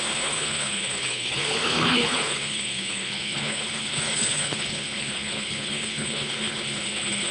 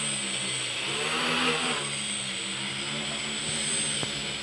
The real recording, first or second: second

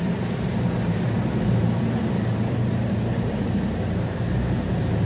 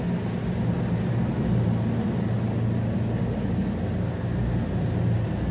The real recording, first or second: second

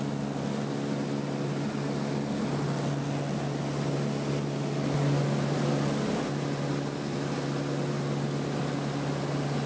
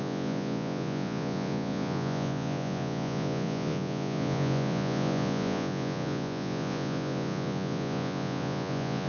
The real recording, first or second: first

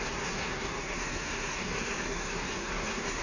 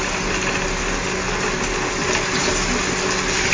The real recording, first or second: second